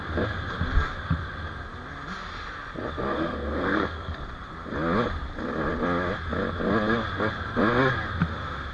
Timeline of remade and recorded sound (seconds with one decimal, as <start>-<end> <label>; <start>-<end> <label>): 0.0-3.1 recorded; 3.1-4.2 remade; 4.2-8.7 recorded